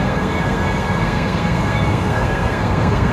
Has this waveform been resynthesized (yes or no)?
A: yes